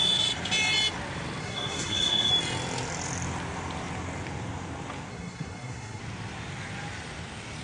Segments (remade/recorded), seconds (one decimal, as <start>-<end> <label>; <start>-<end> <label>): 0.0-1.4 recorded; 1.4-2.3 remade; 2.3-5.1 recorded; 5.1-6.0 remade; 6.0-7.6 recorded